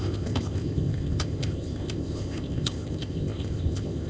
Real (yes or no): no